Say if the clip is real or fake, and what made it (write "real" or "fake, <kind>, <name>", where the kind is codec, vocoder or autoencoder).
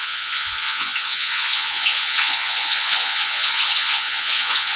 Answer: fake, vocoder, Vocos